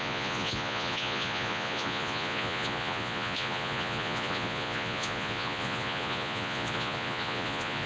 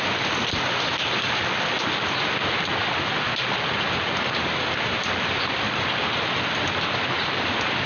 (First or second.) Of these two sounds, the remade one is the first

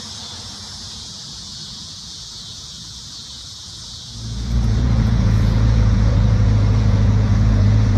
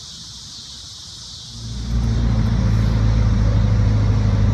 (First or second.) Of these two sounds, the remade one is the first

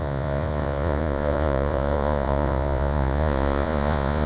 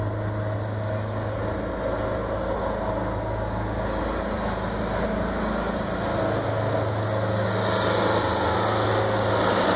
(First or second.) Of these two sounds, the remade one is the first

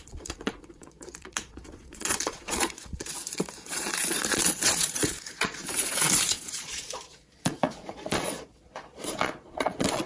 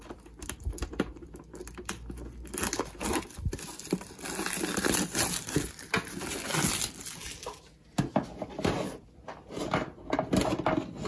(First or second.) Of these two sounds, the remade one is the first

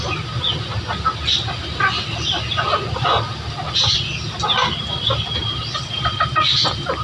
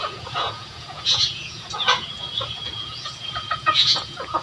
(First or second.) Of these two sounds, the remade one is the second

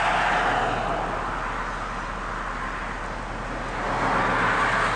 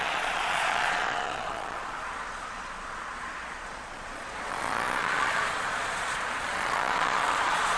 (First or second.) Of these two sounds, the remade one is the second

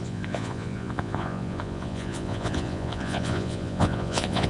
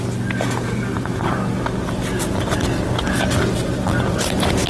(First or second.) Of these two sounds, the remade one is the first